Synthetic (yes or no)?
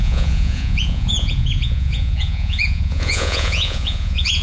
yes